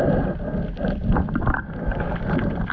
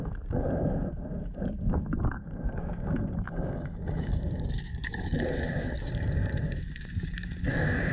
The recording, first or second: first